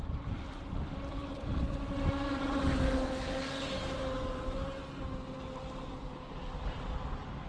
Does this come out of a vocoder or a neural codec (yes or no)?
no